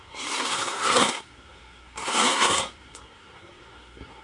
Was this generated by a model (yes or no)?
yes